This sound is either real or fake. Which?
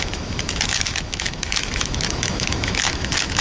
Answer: fake